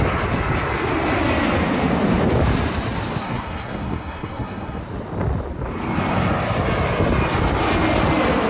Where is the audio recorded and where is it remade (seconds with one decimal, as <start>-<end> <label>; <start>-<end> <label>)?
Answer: 0.0-3.2 recorded; 3.2-4.8 remade; 4.8-8.5 recorded